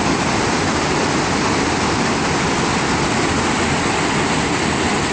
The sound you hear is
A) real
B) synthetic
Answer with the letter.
A